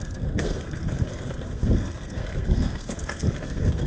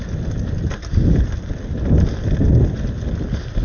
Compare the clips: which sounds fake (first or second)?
first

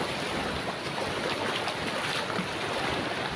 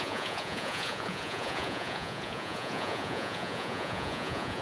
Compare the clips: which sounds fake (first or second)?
second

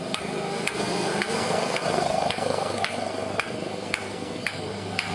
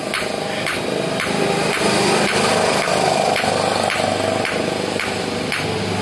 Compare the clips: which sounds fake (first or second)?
first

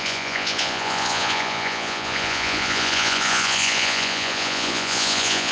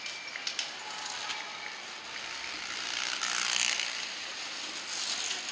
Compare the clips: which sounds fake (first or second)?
first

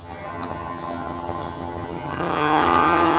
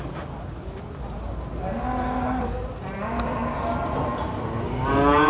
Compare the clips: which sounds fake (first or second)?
first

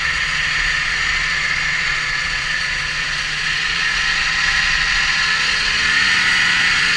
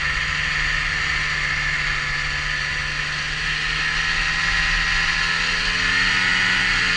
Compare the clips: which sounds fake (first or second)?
first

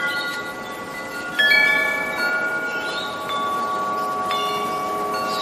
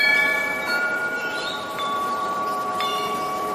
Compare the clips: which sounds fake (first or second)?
second